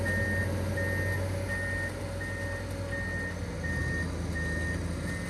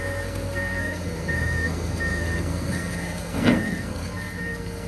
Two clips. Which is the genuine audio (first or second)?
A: first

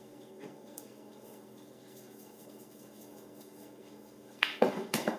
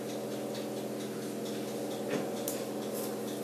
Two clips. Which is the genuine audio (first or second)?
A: second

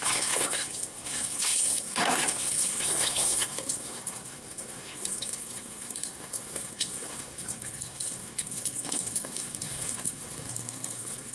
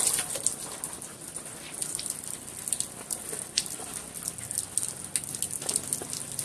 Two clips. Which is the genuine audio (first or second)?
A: second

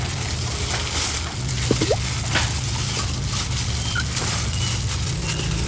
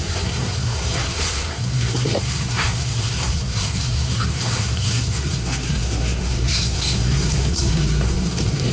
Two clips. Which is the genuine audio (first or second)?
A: first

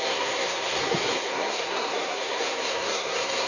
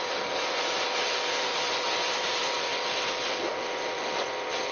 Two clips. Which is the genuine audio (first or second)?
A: second